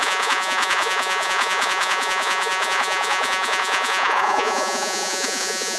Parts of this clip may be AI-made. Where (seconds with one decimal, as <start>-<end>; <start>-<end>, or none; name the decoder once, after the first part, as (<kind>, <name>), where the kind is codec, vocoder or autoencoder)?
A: 0.0-5.8 (vocoder, Vocos)